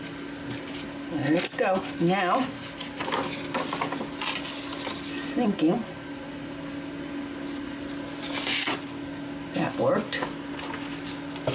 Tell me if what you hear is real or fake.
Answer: real